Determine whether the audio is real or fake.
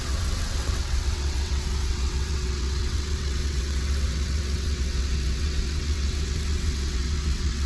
fake